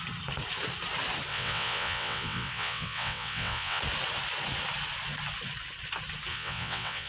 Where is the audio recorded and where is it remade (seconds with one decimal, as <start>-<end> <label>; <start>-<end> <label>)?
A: 0.0-1.3 recorded; 1.3-3.8 remade; 3.8-6.3 recorded; 6.3-7.1 remade